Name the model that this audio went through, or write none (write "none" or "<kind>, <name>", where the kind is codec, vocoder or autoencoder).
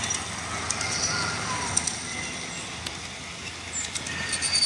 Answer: none